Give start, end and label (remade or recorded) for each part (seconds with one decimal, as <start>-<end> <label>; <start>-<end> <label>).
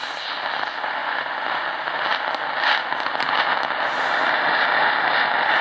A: 0.0-1.0 recorded; 1.0-1.7 remade; 1.7-5.6 recorded